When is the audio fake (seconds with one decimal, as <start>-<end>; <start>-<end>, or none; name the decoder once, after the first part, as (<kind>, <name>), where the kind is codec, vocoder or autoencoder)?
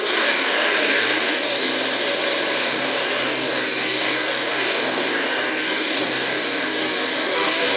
0.0-1.7 (codec, DAC); 2.6-7.8